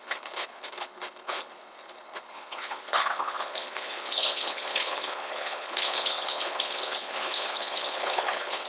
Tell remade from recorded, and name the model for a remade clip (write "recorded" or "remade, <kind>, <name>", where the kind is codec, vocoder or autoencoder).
remade, codec, HILCodec